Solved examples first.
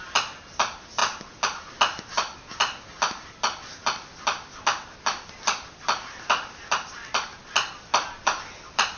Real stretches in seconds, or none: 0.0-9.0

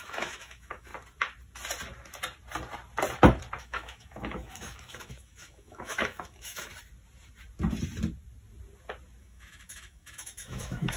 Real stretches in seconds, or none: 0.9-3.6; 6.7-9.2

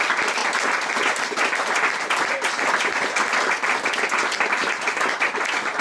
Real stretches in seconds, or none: 0.0-5.8

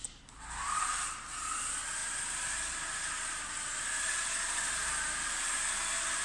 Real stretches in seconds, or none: 0.8-6.2

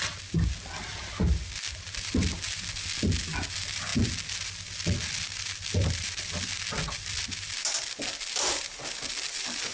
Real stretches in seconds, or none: 0.0-9.7